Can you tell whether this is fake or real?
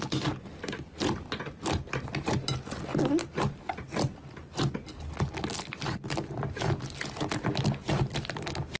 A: real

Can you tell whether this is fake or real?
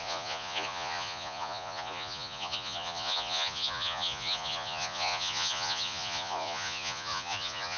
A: fake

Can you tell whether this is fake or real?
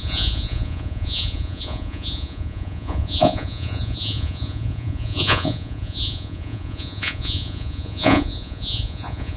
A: fake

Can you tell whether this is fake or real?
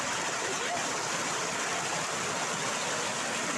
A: real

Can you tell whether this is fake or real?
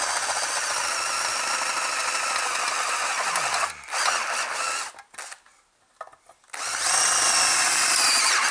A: real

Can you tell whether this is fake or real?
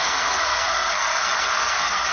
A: fake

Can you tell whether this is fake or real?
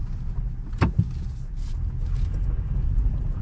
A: real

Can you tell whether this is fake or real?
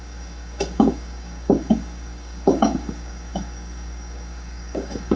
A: fake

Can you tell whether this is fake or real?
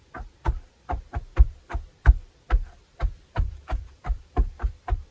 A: fake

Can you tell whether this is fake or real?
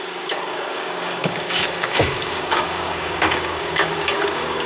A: fake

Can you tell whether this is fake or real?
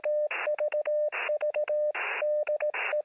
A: real